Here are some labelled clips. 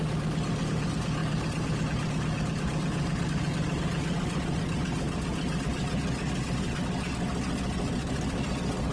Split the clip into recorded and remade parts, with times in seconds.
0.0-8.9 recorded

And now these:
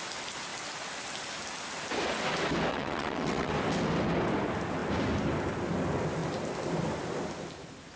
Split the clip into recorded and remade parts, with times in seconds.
0.0-2.7 recorded; 2.7-3.5 remade; 3.5-8.0 recorded

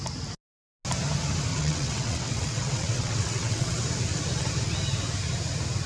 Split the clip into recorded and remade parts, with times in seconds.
0.0-1.5 recorded; 1.5-3.8 remade; 3.8-5.9 recorded

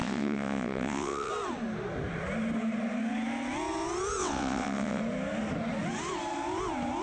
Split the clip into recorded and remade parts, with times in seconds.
0.0-1.3 remade; 1.3-4.2 recorded; 4.2-5.0 remade; 5.0-7.0 recorded

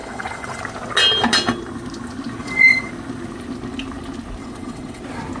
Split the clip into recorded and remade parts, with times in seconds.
0.0-0.6 remade; 0.6-2.4 recorded; 2.4-2.9 remade; 2.9-4.4 recorded; 4.4-5.0 remade; 5.0-5.4 recorded

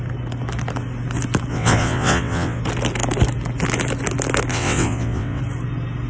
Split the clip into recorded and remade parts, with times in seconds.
0.0-1.5 recorded; 1.5-2.6 remade; 2.6-4.5 recorded; 4.5-5.4 remade; 5.4-6.1 recorded